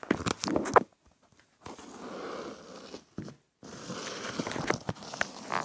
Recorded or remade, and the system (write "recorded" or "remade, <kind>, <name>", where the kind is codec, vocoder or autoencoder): recorded